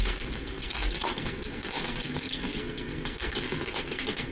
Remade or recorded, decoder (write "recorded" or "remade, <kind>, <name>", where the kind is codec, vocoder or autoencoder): remade, codec, SNAC